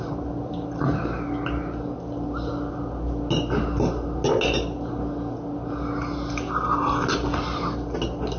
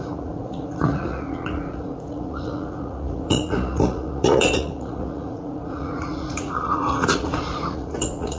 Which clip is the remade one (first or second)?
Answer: second